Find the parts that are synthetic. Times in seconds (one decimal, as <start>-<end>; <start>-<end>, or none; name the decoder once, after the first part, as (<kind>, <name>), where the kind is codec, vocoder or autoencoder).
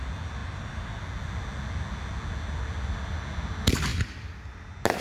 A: none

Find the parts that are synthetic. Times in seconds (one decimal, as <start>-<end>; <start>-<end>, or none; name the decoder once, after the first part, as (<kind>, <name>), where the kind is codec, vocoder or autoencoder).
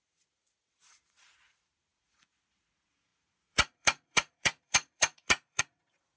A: 0.0-6.2 (vocoder, Vocos)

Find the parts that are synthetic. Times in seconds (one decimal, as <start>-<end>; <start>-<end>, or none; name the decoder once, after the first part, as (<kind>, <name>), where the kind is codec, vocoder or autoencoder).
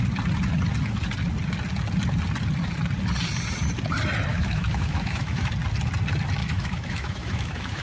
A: 4.3-5.5 (autoencoder, DAC-VAE); 6.4-7.8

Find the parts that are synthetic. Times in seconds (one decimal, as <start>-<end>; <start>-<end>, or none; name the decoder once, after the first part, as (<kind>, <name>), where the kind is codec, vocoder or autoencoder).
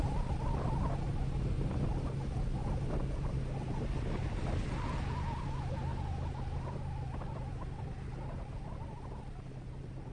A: none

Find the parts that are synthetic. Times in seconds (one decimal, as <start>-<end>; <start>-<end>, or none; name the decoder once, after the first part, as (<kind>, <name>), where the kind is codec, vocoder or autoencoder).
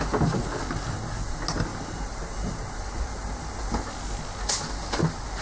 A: none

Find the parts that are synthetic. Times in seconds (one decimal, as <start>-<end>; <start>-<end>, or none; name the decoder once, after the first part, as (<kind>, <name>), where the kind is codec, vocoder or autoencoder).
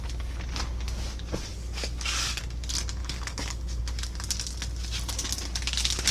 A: 1.5-2.4 (codec, DAC); 3.0-3.8